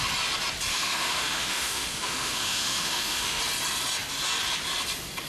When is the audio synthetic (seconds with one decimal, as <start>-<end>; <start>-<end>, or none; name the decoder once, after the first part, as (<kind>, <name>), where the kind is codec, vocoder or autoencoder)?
0.7-3.4 (autoencoder, DAC-VAE)